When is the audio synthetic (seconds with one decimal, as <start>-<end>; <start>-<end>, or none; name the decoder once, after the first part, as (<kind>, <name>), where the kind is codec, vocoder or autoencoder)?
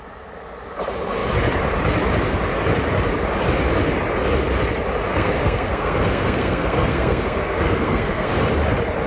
5.1-8.3 (codec, SNAC)